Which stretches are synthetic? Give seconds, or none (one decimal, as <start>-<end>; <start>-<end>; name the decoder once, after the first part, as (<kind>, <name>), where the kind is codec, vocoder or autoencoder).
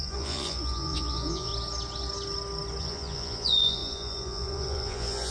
0.0-1.5 (vocoder, Vocos); 2.8-5.3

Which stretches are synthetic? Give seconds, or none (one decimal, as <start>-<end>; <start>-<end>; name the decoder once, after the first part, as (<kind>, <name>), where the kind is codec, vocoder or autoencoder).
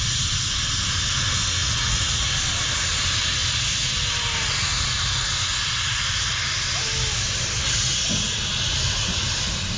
1.6-2.3 (vocoder, Vocos)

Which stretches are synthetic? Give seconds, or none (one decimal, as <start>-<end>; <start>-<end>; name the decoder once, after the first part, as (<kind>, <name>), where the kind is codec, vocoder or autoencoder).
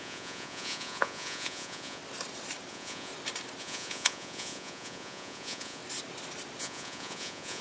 0.0-2.0 (vocoder, Vocos); 2.7-3.1; 3.6-5.8; 6.6-7.6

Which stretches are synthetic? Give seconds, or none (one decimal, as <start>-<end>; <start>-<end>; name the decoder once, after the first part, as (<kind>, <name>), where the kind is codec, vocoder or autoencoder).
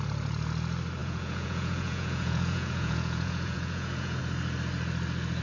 1.0-4.2 (vocoder, Vocos)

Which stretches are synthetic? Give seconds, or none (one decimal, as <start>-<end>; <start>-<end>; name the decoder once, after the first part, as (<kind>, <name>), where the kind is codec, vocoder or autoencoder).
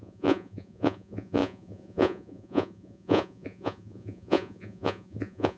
0.0-5.6 (vocoder, Vocos)